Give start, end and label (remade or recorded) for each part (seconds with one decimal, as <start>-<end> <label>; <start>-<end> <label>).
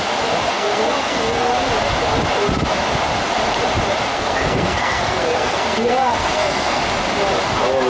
0.0-0.5 recorded; 0.5-1.5 remade; 1.5-4.1 recorded; 4.1-6.8 remade; 6.8-7.9 recorded